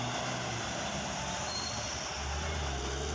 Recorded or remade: recorded